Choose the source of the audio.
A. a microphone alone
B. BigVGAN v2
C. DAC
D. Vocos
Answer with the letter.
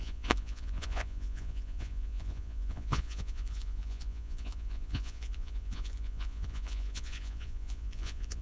D